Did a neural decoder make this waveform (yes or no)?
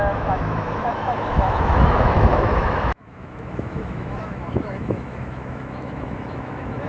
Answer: yes